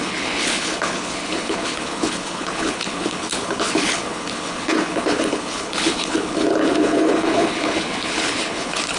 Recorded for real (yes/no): no